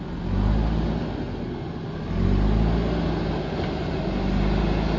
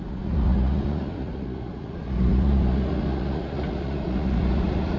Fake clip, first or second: second